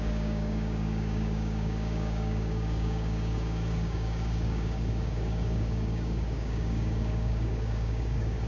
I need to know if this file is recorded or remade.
remade